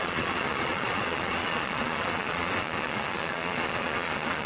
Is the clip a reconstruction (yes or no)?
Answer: yes